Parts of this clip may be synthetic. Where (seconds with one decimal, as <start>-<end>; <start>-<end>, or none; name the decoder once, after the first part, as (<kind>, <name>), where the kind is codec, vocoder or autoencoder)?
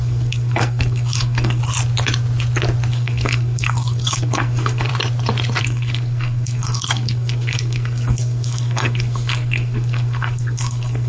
0.0-1.6 (codec, SNAC); 2.9-4.9; 5.6-11.1